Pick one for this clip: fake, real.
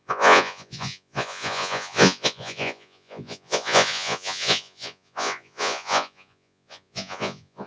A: fake